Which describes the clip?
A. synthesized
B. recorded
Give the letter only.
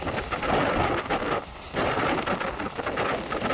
B